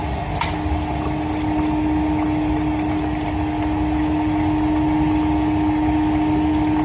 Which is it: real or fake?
real